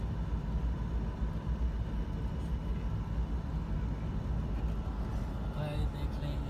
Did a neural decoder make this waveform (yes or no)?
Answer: no